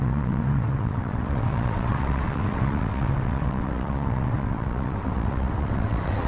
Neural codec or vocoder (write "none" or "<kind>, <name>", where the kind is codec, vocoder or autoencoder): vocoder, WaveNeXt